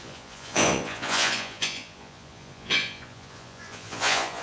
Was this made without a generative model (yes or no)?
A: no